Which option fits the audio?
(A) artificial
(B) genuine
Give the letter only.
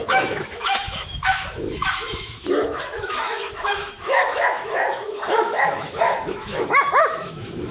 A